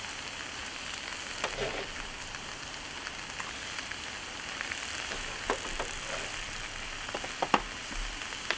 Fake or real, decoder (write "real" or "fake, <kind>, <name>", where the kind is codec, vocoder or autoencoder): real